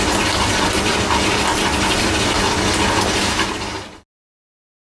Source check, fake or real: real